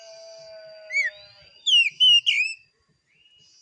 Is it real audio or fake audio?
real